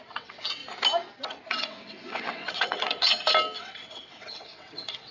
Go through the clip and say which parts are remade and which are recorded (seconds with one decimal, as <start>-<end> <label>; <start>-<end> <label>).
0.0-0.6 remade; 0.6-1.5 recorded; 1.5-3.1 remade; 3.1-3.6 recorded; 3.6-5.1 remade